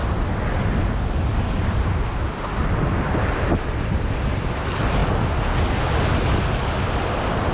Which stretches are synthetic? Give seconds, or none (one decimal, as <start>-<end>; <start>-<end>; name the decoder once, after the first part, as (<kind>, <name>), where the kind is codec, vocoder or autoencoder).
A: none